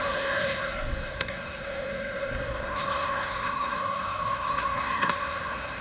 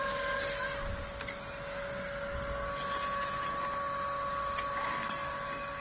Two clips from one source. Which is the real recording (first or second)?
second